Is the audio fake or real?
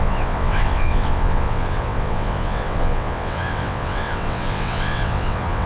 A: fake